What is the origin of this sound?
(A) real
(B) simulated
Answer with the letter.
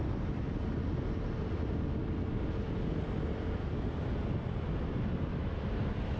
A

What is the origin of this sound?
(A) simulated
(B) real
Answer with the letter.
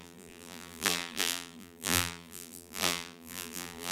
A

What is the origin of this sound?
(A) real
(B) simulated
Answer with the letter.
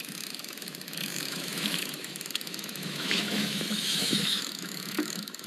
B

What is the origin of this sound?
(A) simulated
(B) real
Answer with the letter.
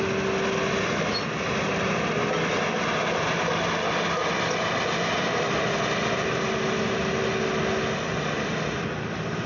B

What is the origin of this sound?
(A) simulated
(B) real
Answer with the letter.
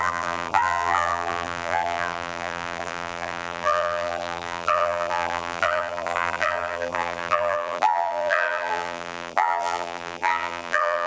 A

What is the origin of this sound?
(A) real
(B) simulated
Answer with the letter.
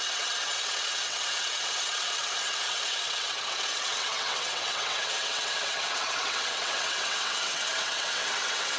B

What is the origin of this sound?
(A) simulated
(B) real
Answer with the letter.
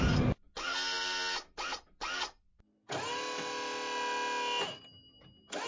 B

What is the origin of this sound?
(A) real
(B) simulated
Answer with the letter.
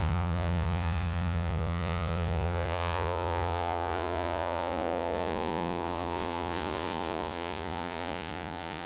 B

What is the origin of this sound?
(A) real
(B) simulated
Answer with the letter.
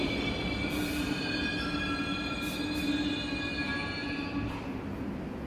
A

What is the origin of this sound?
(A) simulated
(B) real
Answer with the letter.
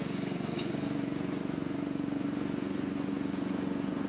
A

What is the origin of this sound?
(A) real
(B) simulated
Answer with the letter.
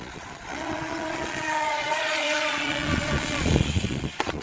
B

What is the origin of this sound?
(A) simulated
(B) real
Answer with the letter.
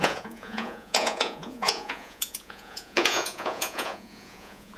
A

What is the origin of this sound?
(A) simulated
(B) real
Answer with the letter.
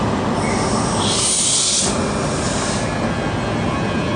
B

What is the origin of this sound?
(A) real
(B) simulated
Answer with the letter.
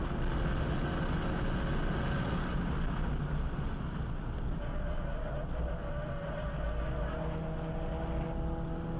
A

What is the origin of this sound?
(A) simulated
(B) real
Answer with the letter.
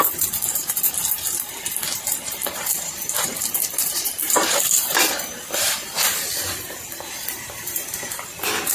A